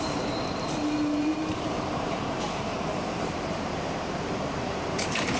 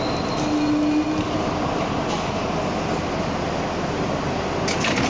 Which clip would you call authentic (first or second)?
second